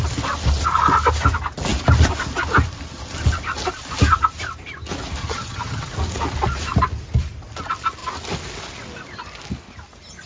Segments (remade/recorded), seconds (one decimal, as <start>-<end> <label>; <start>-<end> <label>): 0.0-5.2 recorded; 5.2-5.9 remade; 5.9-10.3 recorded